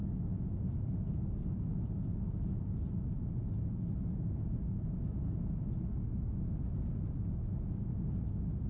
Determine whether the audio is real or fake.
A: real